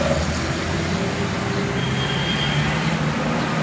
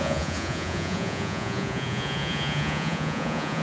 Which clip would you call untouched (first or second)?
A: first